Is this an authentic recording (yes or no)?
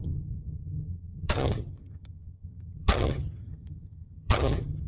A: no